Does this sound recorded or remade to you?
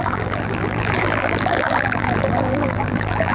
remade